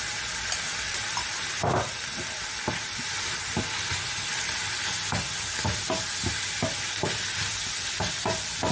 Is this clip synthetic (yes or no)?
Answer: yes